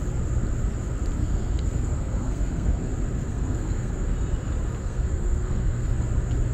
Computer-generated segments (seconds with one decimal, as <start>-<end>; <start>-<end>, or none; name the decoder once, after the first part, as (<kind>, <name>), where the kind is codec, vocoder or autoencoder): 1.2-2.9 (codec, SNAC); 3.3-3.9; 4.8-5.9